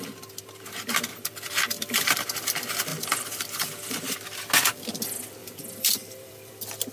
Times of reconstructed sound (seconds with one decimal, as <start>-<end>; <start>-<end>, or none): 1.1-2.1; 5.4-6.5